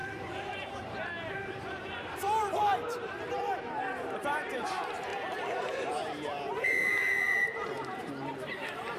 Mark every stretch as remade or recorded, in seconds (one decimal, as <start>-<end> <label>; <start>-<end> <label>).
0.0-9.0 remade